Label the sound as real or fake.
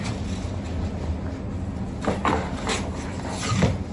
real